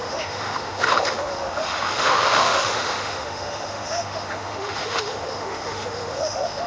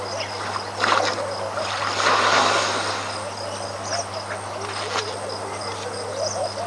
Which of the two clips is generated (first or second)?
first